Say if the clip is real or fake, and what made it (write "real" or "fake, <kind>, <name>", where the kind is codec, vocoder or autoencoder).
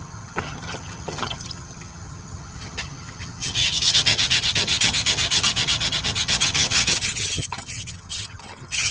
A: fake, vocoder, HiFi-GAN